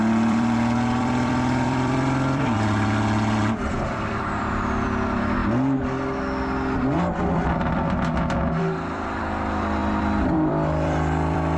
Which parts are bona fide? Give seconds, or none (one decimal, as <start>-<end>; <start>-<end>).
5.4-8.6